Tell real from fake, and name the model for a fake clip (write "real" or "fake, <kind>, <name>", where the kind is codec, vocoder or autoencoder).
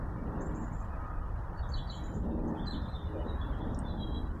real